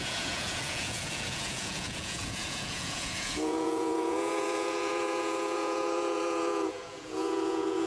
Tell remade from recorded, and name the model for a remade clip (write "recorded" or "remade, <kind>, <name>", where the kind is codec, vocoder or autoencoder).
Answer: remade, vocoder, Vocos